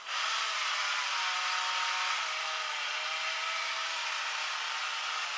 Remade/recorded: recorded